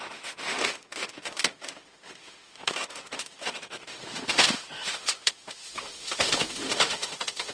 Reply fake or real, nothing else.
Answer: fake